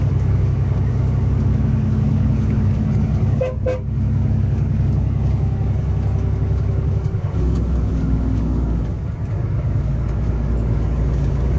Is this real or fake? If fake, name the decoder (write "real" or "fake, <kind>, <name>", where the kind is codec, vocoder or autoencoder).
fake, codec, DAC